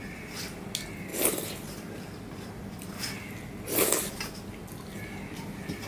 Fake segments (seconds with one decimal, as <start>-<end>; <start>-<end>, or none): none